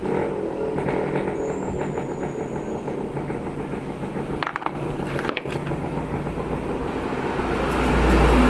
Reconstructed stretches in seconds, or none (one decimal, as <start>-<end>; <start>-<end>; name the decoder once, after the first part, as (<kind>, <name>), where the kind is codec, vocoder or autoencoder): none